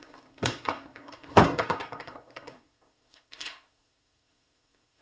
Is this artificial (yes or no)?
yes